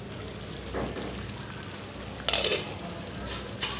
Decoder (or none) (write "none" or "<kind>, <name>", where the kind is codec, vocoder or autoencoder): none